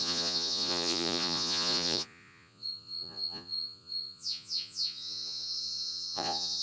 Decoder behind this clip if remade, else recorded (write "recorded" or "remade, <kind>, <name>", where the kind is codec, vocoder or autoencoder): remade, vocoder, Vocos